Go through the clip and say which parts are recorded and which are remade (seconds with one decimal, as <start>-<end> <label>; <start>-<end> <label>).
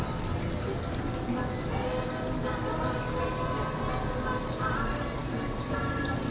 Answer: 0.0-6.3 recorded